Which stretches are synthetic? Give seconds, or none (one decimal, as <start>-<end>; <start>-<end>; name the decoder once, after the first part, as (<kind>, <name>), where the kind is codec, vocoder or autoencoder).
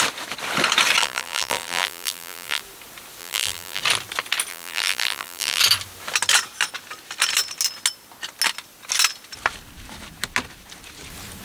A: 1.0-2.6 (vocoder, BigVGAN v2); 3.2-3.8; 4.5-5.6